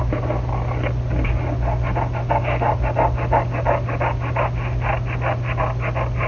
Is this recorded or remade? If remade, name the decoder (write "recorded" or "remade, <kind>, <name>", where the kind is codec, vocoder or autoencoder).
recorded